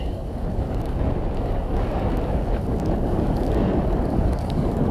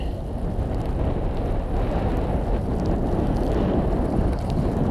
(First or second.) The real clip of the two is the second